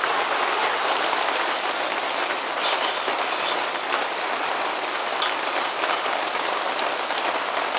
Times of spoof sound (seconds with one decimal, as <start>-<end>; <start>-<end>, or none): none